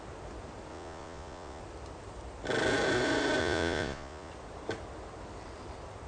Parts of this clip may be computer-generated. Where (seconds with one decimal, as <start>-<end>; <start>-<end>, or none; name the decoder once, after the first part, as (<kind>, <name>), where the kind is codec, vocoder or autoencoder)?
0.7-1.6 (vocoder, Vocos); 3.4-4.3